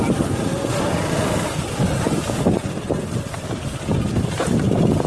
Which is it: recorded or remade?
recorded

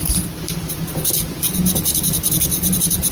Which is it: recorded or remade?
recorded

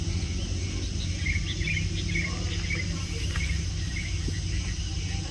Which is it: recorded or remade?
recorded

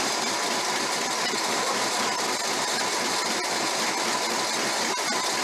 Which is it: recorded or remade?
recorded